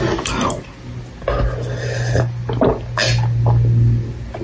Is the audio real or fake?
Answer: real